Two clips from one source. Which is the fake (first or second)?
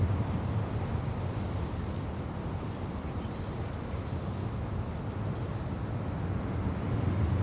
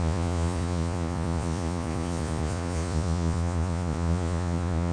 second